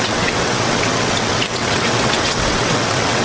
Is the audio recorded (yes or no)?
no